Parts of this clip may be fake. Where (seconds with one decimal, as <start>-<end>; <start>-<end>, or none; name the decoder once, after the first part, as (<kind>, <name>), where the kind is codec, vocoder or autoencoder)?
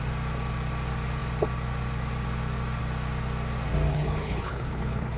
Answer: 3.9-5.2 (codec, HILCodec)